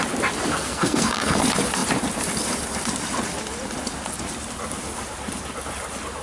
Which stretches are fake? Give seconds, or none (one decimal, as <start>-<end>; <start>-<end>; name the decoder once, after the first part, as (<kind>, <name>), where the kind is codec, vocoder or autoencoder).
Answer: 0.5-1.4 (codec, SNAC)